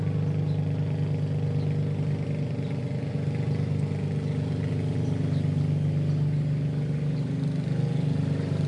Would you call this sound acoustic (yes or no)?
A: yes